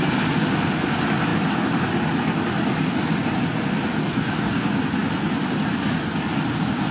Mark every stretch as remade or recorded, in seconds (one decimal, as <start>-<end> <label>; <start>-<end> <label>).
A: 0.0-4.0 recorded; 4.0-4.6 remade; 4.6-6.9 recorded